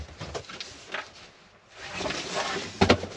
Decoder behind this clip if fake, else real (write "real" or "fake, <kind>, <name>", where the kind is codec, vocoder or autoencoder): real